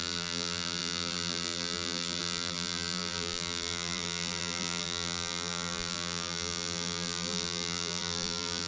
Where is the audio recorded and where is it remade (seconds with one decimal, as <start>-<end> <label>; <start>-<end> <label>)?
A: 0.0-8.7 remade